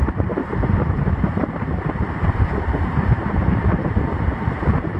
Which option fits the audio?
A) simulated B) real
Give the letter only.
A